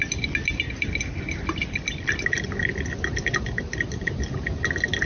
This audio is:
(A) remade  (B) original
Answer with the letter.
B